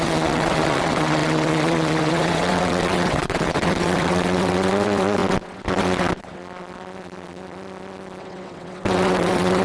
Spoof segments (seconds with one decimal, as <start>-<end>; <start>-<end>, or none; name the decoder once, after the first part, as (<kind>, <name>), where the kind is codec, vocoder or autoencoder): 0.0-6.4 (vocoder, WaveNeXt); 8.2-9.6